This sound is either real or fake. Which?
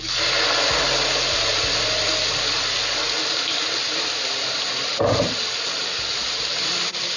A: real